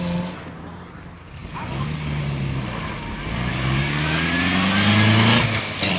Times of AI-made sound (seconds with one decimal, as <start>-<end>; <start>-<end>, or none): 1.4-2.2; 3.5-4.4